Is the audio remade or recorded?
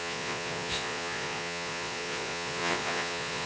remade